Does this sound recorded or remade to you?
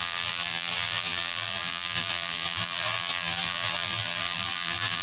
remade